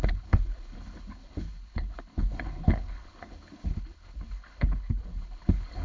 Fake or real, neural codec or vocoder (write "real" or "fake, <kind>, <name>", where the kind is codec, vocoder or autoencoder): fake, codec, HILCodec